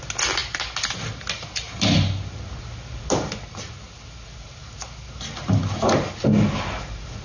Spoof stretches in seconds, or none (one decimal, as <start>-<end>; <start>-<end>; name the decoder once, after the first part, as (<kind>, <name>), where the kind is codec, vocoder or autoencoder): none